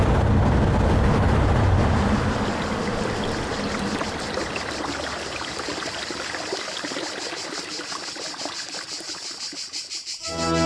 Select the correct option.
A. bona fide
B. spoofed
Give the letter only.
A